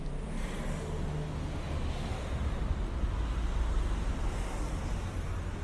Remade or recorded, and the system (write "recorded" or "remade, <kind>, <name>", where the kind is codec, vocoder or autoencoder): recorded